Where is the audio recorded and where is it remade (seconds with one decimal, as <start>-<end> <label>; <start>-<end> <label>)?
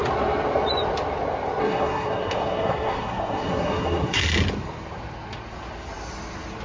0.0-1.6 recorded; 1.6-4.2 remade; 4.2-6.6 recorded